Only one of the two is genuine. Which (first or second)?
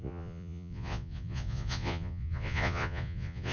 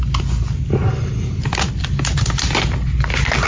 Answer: second